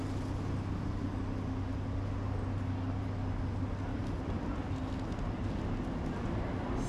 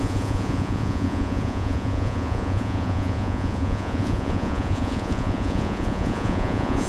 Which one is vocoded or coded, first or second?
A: second